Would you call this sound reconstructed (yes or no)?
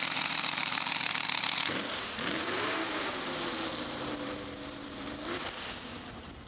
yes